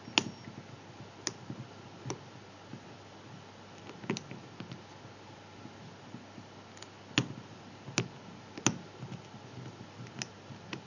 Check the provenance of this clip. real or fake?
real